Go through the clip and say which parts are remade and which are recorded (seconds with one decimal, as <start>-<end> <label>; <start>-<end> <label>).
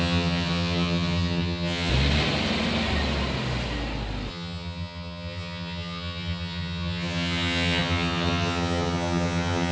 0.0-1.9 remade; 1.9-4.3 recorded; 4.3-9.7 remade